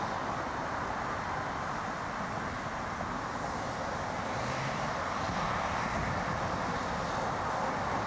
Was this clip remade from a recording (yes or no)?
no